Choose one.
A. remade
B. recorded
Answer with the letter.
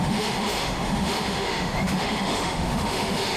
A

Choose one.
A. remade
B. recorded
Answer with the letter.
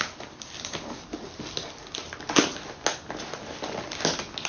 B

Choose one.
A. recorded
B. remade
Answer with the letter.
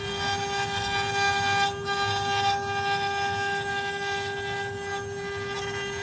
A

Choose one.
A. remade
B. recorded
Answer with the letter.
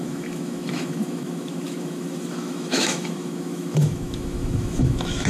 A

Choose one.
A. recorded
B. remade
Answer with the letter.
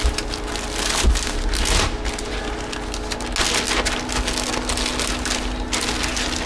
A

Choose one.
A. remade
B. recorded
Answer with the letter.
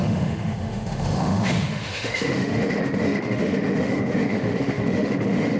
A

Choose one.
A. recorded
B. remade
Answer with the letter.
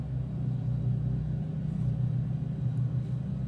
A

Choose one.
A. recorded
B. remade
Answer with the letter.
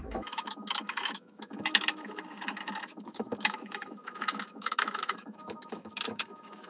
B